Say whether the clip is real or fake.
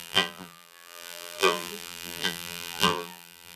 fake